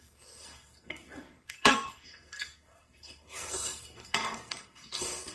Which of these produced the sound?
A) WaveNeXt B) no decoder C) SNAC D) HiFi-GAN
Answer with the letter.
C